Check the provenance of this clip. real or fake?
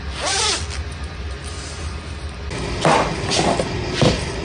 real